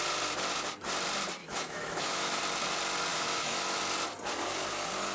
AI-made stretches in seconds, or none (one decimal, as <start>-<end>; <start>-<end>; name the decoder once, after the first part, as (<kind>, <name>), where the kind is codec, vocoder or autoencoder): 1.4-2.4 (autoencoder, DAC-VAE); 3.1-3.8